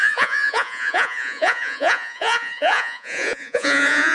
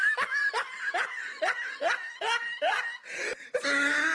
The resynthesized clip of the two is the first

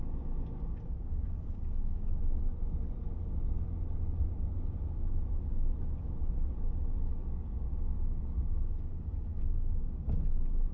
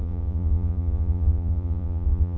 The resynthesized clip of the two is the second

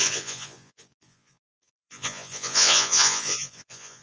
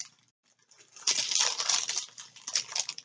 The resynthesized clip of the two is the first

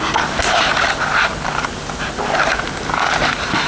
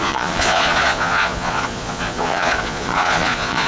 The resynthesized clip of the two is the second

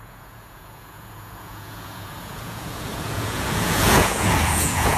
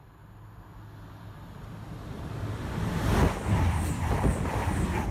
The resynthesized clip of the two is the first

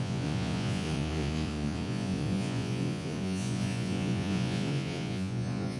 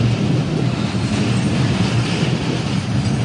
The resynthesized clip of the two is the first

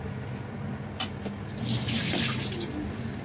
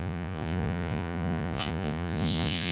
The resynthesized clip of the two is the second